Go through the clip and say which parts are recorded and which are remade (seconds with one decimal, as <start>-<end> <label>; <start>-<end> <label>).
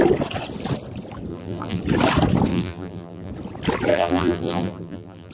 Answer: 0.0-1.3 recorded; 1.3-1.8 remade; 1.8-2.5 recorded; 2.5-3.3 remade; 3.3-3.9 recorded; 3.9-5.3 remade